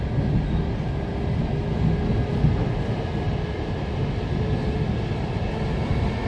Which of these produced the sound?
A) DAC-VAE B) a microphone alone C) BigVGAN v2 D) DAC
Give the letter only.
B